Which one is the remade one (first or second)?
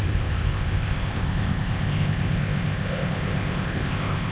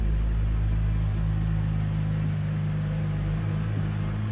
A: first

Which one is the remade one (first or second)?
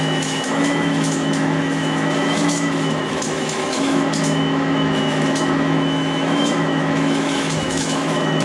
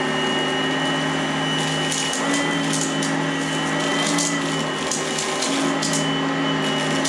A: first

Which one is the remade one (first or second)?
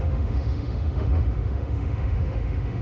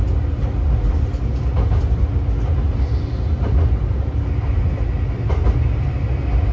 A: first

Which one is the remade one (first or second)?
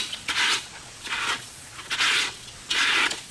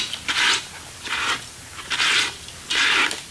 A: first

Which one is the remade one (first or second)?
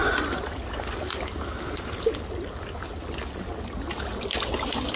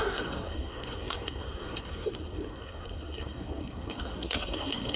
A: second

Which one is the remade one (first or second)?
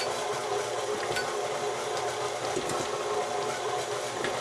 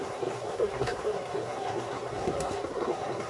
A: second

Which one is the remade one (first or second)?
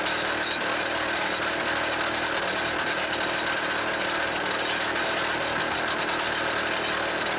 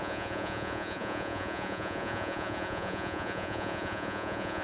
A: second